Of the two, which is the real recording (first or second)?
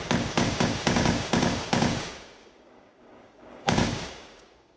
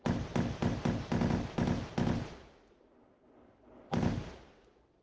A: second